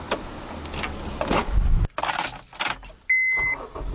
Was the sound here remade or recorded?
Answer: recorded